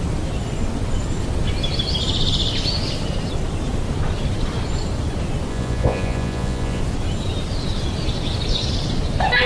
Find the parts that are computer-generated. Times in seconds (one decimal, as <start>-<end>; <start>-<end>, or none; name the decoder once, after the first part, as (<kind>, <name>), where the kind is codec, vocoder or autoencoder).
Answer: 5.5-6.8 (vocoder, Vocos)